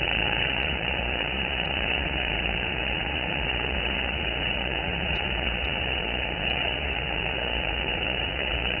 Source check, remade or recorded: remade